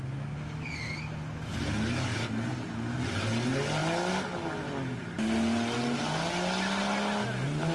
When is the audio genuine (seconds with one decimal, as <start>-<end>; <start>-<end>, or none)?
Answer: 0.0-7.7